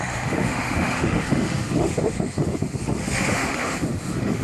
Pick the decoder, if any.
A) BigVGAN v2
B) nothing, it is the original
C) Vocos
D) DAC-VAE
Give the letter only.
D